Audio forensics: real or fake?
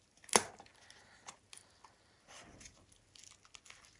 real